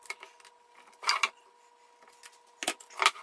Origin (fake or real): real